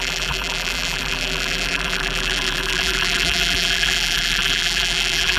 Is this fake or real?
fake